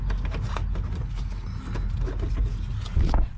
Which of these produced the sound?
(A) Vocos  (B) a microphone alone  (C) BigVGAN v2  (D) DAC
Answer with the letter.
B